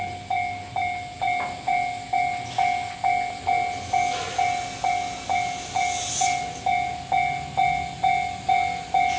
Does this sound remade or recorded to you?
recorded